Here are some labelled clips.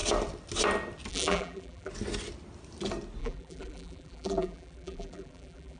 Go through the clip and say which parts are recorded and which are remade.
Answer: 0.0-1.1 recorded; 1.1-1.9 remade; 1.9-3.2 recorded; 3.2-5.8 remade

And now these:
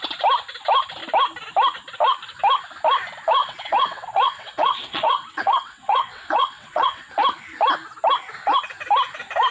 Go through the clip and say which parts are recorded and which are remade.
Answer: 0.0-3.4 recorded; 3.4-7.1 remade; 7.1-9.5 recorded

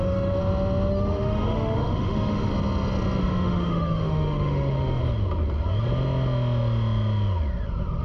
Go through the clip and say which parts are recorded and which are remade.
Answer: 0.0-0.4 remade; 0.4-0.9 recorded; 0.9-2.5 remade; 2.5-3.2 recorded; 3.2-5.0 remade; 5.0-8.0 recorded

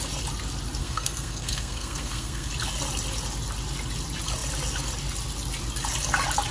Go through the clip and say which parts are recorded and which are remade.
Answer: 0.0-0.8 recorded; 0.8-2.5 remade; 2.5-6.5 recorded

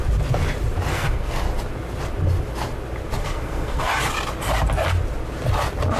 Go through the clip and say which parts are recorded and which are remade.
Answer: 0.0-0.9 recorded; 0.9-1.4 remade; 1.4-3.2 recorded; 3.2-3.9 remade; 3.9-6.0 recorded

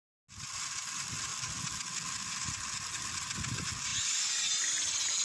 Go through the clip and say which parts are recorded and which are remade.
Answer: 0.0-5.2 recorded